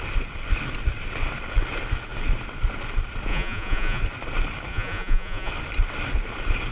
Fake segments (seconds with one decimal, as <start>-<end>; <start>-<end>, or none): 3.3-4.0; 4.7-5.5